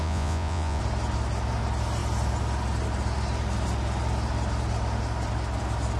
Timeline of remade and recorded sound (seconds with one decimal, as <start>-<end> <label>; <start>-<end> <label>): 0.0-0.8 remade; 0.8-6.0 recorded